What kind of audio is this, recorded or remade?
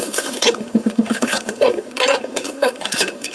remade